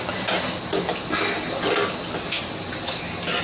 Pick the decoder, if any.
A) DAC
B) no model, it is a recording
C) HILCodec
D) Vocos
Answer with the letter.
B